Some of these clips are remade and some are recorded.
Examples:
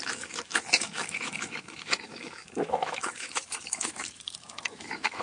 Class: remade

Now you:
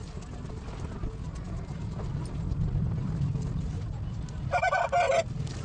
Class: recorded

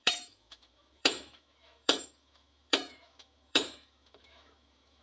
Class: remade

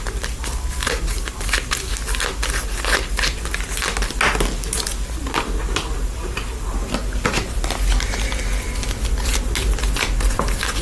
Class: recorded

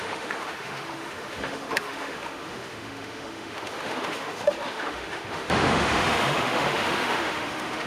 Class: remade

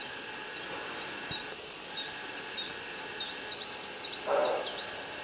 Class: recorded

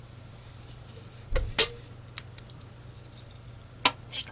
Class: recorded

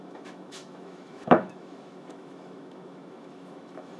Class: remade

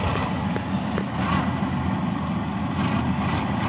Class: recorded